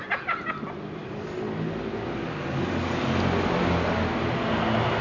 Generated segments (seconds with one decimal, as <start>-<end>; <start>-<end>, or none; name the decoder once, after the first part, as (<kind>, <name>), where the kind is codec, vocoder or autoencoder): none